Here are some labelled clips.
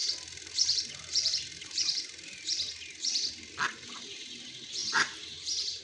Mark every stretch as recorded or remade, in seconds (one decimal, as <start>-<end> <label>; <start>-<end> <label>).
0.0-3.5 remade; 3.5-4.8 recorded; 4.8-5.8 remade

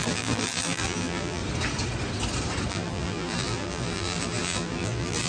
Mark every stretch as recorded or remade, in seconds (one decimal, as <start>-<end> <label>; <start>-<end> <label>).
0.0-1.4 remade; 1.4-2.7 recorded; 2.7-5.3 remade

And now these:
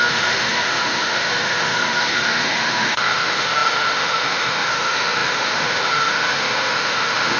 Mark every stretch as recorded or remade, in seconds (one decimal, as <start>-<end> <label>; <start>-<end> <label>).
0.0-7.4 remade

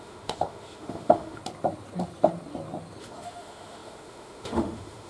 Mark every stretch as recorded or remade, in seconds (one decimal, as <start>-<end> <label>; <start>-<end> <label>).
0.0-1.4 remade; 1.4-3.0 recorded; 3.0-5.1 remade

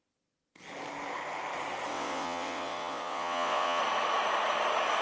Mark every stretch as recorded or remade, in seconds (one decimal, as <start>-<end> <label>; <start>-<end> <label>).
0.0-1.9 recorded; 1.9-3.8 remade; 3.8-5.0 recorded

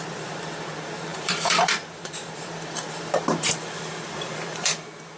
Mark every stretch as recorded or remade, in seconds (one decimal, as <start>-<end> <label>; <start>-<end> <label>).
0.0-5.2 remade